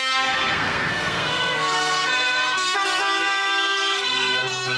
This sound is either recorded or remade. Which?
remade